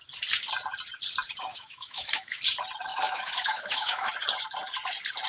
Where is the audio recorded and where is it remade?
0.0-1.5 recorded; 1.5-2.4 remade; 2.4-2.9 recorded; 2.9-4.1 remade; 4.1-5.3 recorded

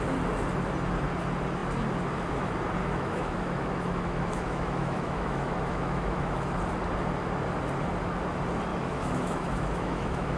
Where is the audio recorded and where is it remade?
0.0-2.8 recorded; 2.8-6.6 remade; 6.6-8.7 recorded; 8.7-10.4 remade

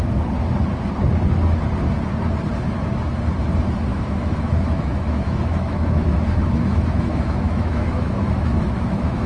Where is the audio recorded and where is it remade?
0.0-3.9 recorded; 3.9-9.3 remade

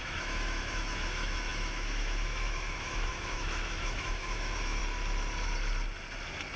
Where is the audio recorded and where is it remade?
0.0-4.8 remade; 4.8-6.6 recorded